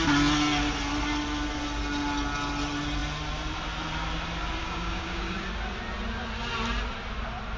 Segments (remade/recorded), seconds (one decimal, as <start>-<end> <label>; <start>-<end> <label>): 0.0-4.6 recorded; 4.6-5.4 remade; 5.4-7.6 recorded